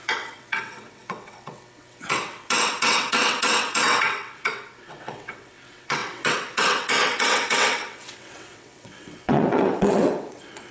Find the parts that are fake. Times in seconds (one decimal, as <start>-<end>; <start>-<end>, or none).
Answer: 0.0-10.7